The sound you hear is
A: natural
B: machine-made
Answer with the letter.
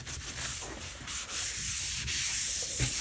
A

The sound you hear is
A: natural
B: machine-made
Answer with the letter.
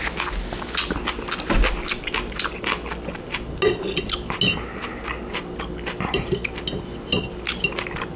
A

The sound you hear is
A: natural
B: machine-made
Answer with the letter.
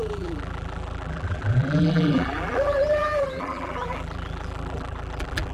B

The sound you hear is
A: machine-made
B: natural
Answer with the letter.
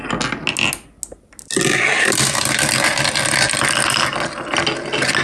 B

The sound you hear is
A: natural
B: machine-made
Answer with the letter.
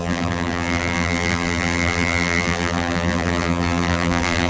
B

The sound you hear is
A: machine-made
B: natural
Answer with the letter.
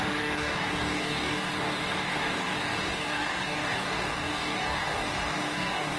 A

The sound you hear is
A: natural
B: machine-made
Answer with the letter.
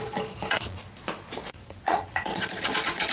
B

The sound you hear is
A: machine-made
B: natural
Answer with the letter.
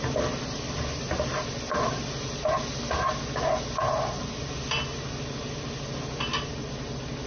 B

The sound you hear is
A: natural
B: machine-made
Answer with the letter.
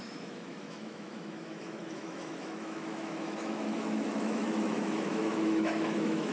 B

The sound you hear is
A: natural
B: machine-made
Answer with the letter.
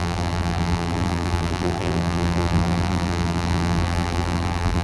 B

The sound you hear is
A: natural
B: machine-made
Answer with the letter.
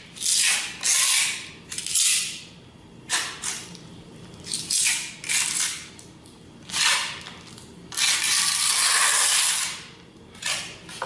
A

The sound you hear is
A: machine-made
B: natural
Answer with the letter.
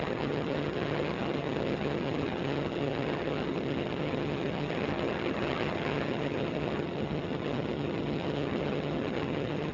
A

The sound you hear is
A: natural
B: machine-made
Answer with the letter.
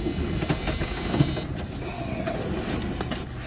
A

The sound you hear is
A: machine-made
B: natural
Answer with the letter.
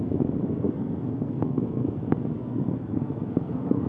A